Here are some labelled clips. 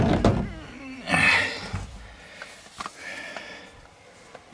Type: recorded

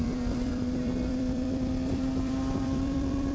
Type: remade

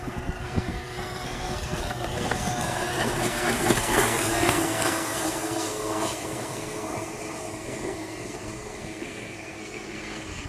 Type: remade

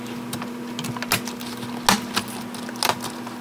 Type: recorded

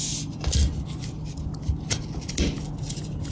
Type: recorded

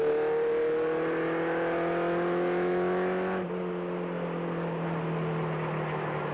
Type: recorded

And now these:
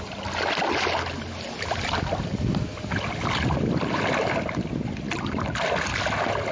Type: recorded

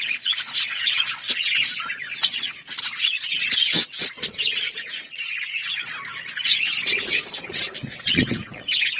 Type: remade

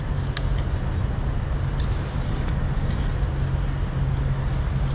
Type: recorded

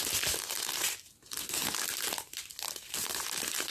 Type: recorded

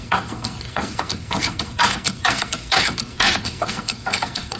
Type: remade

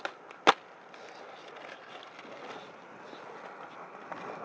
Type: recorded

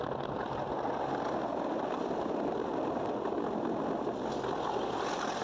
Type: recorded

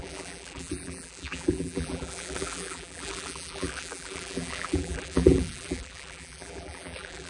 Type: remade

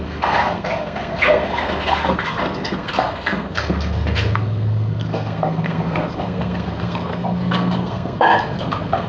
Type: remade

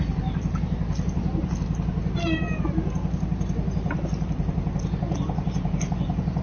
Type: recorded